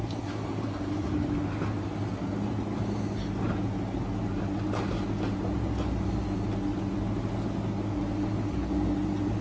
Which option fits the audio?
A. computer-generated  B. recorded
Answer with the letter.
B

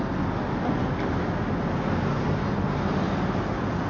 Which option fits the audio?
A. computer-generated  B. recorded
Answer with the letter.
B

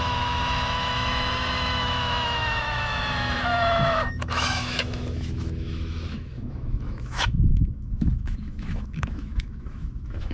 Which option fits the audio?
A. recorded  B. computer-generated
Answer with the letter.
B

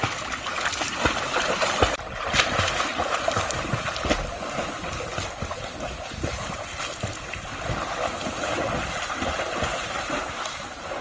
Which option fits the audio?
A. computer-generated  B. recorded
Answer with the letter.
B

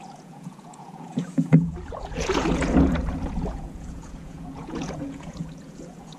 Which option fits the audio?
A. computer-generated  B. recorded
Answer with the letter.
A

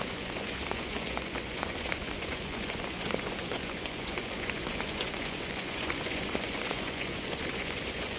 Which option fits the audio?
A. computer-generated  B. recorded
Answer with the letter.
A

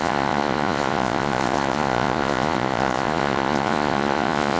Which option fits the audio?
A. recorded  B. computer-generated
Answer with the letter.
B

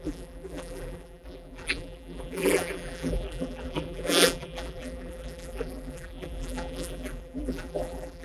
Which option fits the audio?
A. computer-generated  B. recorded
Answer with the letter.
A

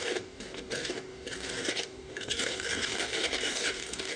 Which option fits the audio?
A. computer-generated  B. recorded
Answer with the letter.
A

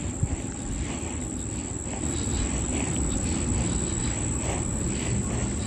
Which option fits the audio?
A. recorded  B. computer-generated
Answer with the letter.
A